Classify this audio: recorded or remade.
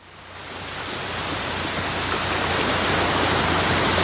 recorded